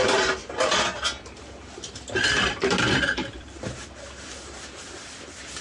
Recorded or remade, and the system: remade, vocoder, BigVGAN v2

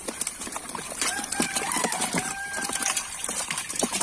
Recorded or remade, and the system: remade, vocoder, BigVGAN v2